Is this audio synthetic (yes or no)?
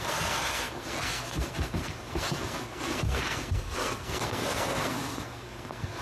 yes